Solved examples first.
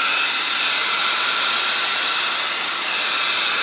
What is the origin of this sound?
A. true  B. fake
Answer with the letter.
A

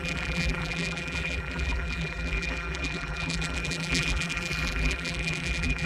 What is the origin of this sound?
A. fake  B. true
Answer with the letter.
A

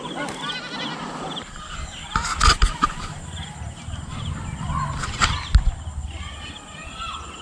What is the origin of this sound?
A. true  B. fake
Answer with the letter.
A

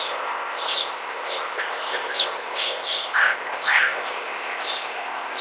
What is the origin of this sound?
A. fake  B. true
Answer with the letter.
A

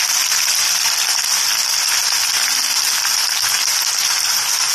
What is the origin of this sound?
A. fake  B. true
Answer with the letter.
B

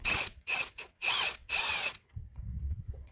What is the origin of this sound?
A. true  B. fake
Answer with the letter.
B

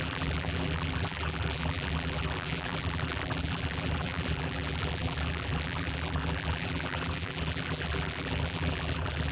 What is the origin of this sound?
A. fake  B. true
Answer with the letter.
A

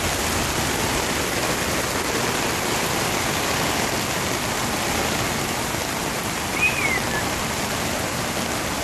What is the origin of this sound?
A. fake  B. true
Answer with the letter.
B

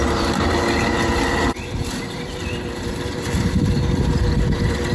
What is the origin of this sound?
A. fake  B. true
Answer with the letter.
A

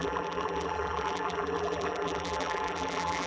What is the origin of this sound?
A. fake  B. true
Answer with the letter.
A